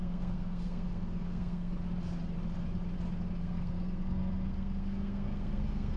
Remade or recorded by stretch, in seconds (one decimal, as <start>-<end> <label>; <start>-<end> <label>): 0.0-1.7 remade; 1.7-3.4 recorded; 3.4-6.0 remade